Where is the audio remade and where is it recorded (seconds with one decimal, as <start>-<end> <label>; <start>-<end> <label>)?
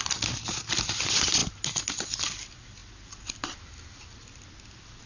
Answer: 0.0-5.1 recorded